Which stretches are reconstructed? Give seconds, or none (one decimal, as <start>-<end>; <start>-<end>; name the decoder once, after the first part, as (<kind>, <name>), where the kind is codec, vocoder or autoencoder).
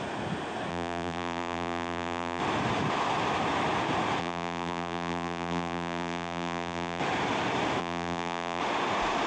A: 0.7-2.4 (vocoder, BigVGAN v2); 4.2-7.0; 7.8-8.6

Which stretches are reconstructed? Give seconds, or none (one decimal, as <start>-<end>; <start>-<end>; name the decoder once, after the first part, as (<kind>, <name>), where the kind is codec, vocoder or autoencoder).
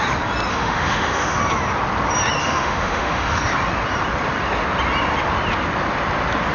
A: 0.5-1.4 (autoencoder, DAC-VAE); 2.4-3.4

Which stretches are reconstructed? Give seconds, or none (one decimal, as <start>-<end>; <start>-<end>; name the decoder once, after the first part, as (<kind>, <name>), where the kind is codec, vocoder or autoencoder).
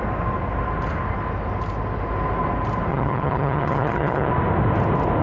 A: 2.9-4.3 (vocoder, HiFi-GAN)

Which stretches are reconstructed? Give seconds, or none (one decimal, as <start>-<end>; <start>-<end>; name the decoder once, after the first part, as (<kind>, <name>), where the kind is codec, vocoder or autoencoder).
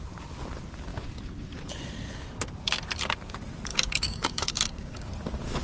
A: 3.7-5.1 (codec, DAC)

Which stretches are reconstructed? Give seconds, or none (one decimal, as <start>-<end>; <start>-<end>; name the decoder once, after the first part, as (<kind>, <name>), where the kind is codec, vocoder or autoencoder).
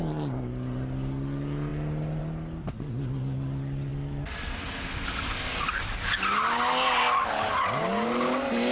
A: none